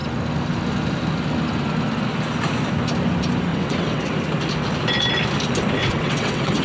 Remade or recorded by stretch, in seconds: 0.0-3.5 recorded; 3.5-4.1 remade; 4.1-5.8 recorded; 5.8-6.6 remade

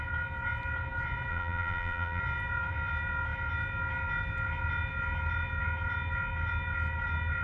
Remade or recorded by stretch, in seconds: 0.0-1.3 recorded; 1.3-2.2 remade; 2.2-7.4 recorded